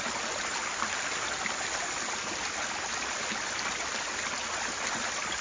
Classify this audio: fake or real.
real